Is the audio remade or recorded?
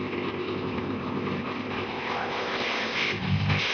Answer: remade